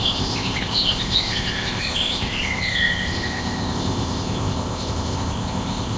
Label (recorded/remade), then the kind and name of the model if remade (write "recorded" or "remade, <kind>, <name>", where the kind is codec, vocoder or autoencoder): remade, codec, ZipCodec